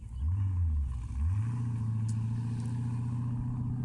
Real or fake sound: real